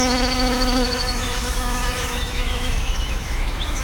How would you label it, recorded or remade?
remade